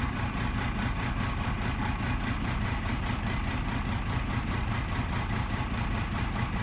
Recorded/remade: recorded